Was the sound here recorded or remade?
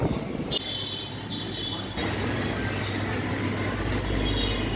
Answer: recorded